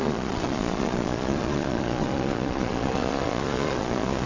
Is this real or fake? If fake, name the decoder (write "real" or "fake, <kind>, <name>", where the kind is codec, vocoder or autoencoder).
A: fake, vocoder, Vocos